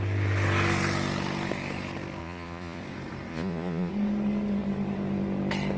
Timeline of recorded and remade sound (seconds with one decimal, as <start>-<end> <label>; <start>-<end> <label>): 0.0-2.2 recorded; 2.2-2.8 remade; 2.8-3.3 recorded; 3.3-3.9 remade; 3.9-5.8 recorded